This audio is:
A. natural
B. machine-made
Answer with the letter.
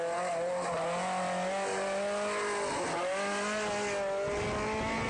A